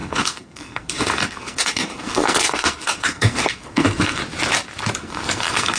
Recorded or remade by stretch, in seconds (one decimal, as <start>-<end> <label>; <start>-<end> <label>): 0.0-4.2 remade; 4.2-5.0 recorded; 5.0-5.8 remade